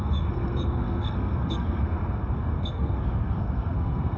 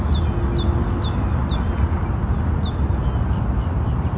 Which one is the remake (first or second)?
first